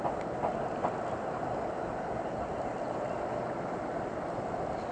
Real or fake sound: real